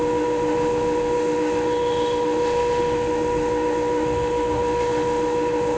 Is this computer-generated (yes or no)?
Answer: yes